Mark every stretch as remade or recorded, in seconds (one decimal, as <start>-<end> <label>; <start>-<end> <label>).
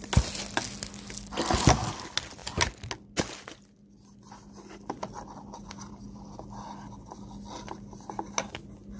0.0-9.0 recorded